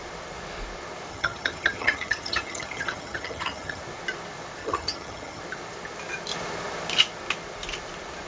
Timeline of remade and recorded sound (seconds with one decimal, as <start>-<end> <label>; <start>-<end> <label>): 0.0-1.1 recorded; 1.1-3.8 remade; 3.8-4.6 recorded; 4.6-5.4 remade; 5.4-8.3 recorded